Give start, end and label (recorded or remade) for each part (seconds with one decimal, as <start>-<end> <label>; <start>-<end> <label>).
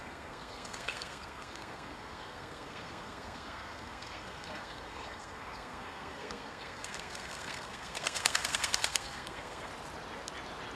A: 0.0-9.7 remade; 9.7-10.8 recorded